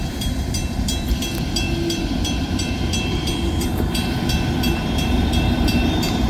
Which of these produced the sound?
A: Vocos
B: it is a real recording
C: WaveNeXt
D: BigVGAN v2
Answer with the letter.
D